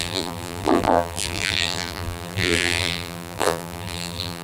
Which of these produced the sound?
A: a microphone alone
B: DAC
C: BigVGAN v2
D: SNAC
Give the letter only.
C